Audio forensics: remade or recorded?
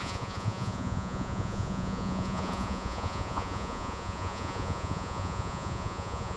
remade